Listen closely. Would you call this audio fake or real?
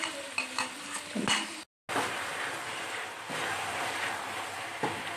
real